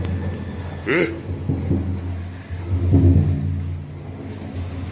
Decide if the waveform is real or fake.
real